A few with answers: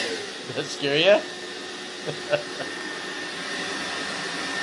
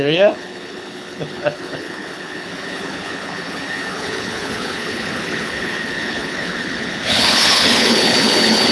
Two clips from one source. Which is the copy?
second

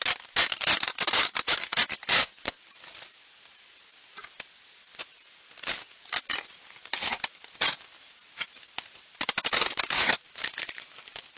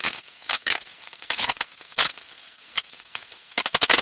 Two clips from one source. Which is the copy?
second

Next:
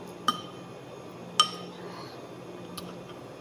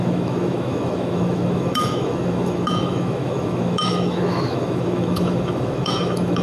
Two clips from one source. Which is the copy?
second